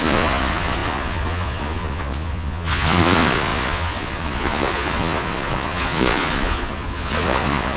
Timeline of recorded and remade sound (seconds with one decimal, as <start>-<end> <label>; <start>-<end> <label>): 0.0-7.8 remade